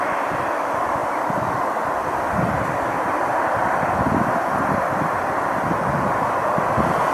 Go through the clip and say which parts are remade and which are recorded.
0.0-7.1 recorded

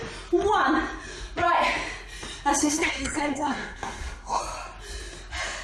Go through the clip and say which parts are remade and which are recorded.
0.0-2.6 recorded; 2.6-4.4 remade; 4.4-5.6 recorded

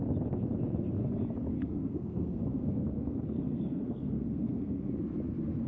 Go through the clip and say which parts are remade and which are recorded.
0.0-1.5 recorded; 1.5-4.9 remade; 4.9-5.7 recorded

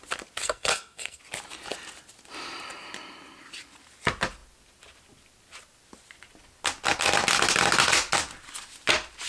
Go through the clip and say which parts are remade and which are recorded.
0.0-0.4 recorded; 0.4-1.2 remade; 1.2-9.3 recorded

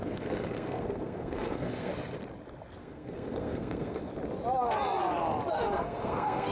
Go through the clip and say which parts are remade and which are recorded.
0.0-1.9 remade; 1.9-2.8 recorded; 2.8-4.1 remade; 4.1-5.5 recorded; 5.5-6.5 remade

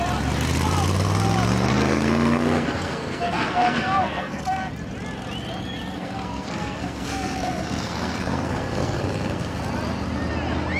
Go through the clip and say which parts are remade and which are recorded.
0.0-1.7 recorded; 1.7-4.7 remade; 4.7-5.9 recorded; 5.9-9.6 remade; 9.6-10.8 recorded

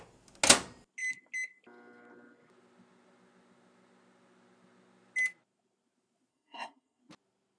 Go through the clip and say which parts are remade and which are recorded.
0.0-6.3 recorded; 6.3-7.0 remade; 7.0-7.6 recorded